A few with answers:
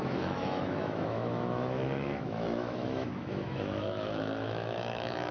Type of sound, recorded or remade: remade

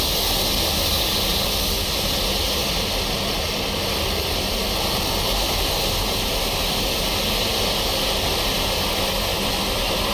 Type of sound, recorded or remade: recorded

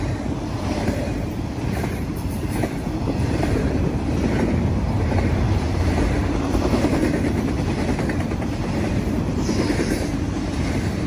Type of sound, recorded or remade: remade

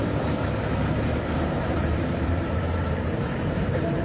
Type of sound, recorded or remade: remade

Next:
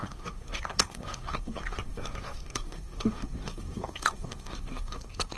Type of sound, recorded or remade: remade